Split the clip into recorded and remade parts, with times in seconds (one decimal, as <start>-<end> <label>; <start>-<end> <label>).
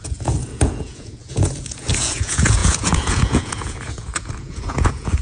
0.0-5.2 remade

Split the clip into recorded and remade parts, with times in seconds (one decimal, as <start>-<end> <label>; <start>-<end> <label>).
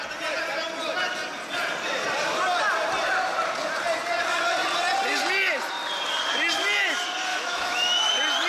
0.0-7.3 recorded; 7.3-8.1 remade; 8.1-8.5 recorded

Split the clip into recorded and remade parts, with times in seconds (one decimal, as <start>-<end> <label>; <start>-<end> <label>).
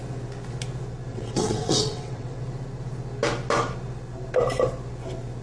0.0-1.1 recorded; 1.1-2.4 remade; 2.4-5.4 recorded